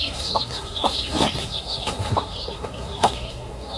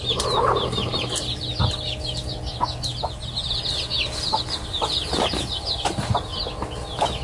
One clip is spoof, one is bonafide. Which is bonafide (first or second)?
second